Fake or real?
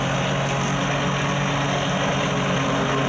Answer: real